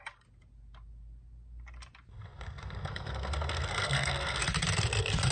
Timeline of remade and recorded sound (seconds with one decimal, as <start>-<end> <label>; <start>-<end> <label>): 0.0-2.1 recorded; 2.1-4.4 remade; 4.4-5.3 recorded